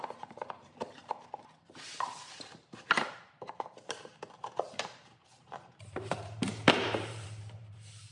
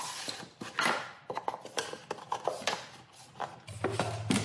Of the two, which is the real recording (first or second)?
second